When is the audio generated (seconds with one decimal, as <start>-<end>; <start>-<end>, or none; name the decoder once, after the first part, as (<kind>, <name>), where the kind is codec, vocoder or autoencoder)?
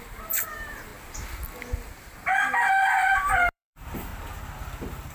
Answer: 0.0-0.9 (vocoder, BigVGAN v2); 2.9-4.1